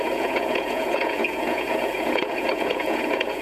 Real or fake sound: fake